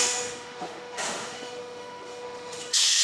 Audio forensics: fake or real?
fake